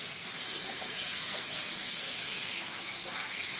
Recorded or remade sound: remade